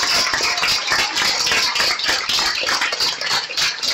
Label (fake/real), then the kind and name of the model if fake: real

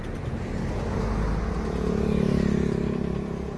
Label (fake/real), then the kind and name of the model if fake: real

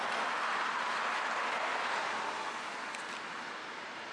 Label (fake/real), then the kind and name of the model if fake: real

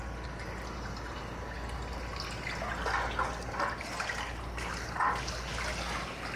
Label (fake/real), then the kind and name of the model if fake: real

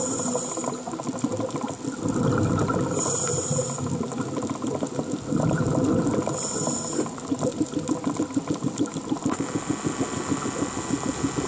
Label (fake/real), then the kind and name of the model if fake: real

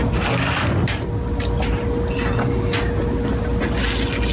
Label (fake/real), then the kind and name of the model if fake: real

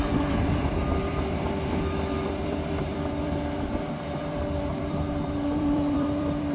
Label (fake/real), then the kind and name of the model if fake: fake, vocoder, BigVGAN v2